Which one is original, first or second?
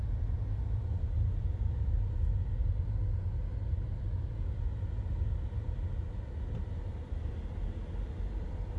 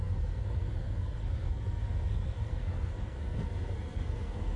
first